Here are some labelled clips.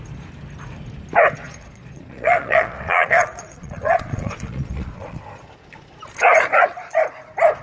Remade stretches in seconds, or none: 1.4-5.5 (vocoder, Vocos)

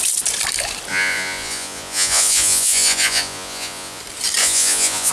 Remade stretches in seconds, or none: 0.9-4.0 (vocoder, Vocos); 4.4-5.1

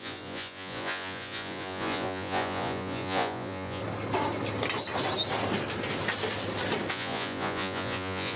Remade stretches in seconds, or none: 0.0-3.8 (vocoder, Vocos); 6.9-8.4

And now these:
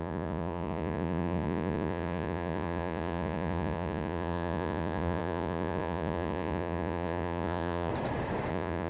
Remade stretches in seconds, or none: 0.0-7.9 (vocoder, Vocos); 8.5-8.9

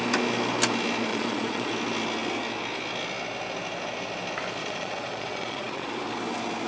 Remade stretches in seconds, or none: 1.1-1.7 (vocoder, Vocos); 4.6-6.0

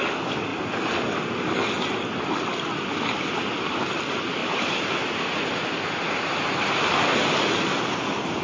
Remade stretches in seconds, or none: none

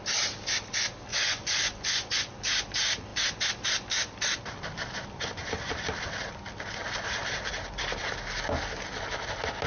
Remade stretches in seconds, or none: 1.1-2.2 (vocoder, Vocos)